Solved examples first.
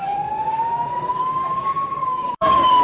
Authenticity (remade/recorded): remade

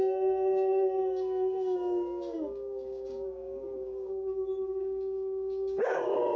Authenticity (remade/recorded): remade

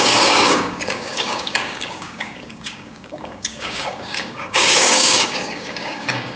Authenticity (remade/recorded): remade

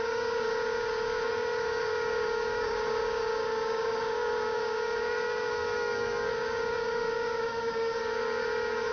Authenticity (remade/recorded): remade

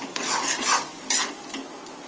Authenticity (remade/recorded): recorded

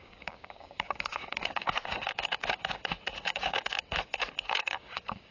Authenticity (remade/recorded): remade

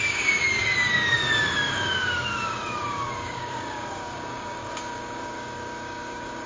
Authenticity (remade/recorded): remade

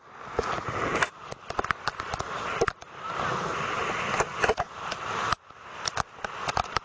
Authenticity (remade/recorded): recorded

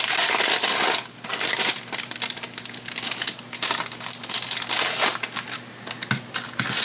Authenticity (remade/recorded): recorded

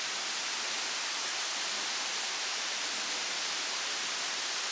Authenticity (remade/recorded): recorded